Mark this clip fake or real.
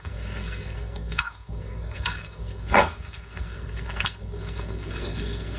fake